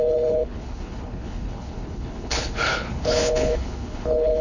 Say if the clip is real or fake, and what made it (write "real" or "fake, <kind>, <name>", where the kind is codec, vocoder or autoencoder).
fake, codec, HILCodec